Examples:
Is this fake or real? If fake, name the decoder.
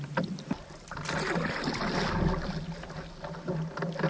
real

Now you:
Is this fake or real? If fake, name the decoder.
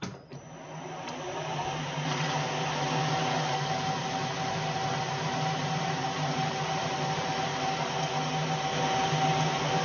real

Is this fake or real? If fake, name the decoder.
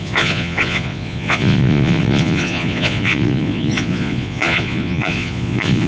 fake, vocoder, Vocos